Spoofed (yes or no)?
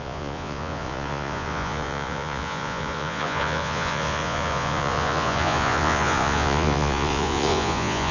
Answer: yes